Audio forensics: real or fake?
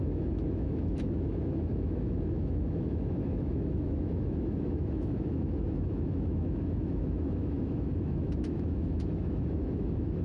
fake